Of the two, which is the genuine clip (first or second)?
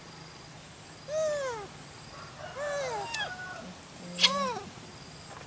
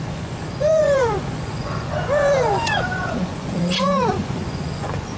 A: first